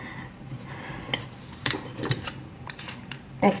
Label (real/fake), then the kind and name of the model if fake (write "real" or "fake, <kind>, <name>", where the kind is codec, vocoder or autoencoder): fake, vocoder, BigVGAN v2